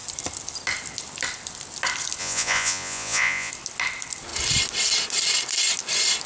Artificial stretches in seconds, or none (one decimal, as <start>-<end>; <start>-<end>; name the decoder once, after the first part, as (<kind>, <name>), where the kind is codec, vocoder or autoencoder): 2.2-3.5 (vocoder, Vocos)